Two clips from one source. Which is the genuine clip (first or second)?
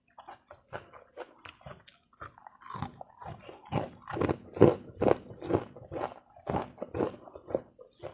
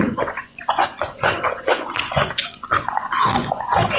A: first